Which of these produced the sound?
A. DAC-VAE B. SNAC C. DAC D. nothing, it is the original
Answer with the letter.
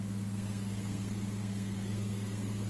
B